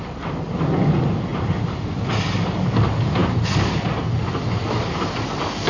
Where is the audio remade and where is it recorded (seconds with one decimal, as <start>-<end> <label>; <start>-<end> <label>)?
0.0-1.3 recorded; 1.3-2.4 remade; 2.4-5.7 recorded